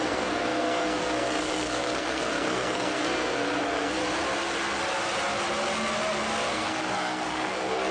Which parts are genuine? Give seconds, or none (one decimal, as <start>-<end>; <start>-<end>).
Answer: 4.0-6.5